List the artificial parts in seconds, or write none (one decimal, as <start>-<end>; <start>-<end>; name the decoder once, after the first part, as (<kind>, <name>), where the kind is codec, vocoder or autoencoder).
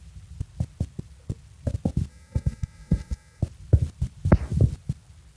2.1-3.4 (codec, DAC)